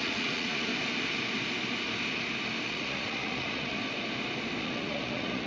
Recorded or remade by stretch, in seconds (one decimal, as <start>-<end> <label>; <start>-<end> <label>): 0.0-0.7 remade; 0.7-2.7 recorded; 2.7-3.8 remade; 3.8-4.6 recorded; 4.6-5.5 remade